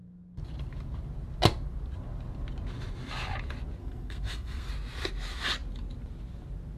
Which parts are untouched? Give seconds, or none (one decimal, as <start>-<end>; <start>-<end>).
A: 0.0-3.8; 4.7-6.8